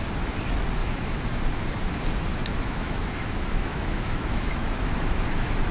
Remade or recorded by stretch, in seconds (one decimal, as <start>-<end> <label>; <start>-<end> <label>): 0.0-0.8 recorded; 0.8-1.4 remade; 1.4-2.3 recorded; 2.3-5.7 remade